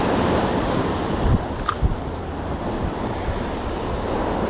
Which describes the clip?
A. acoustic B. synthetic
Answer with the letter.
B